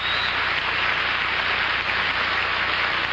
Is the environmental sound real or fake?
real